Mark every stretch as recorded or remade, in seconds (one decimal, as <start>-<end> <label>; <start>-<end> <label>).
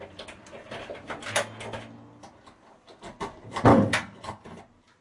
0.0-3.7 recorded; 3.7-4.6 remade; 4.6-5.0 recorded